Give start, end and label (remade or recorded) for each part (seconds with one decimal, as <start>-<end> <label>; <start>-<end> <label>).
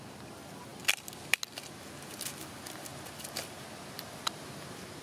0.0-5.0 recorded